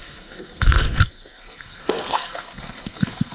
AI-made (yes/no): yes